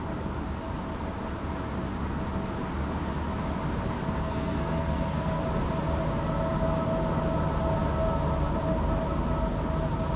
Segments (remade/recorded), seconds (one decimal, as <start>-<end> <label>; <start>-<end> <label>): 0.0-4.2 recorded; 4.2-5.4 remade; 5.4-10.2 recorded